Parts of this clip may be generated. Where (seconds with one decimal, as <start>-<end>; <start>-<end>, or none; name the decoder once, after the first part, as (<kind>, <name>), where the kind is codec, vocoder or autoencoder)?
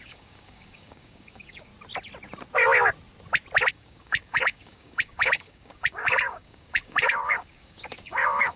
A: 0.0-1.7 (codec, DAC); 3.7-8.6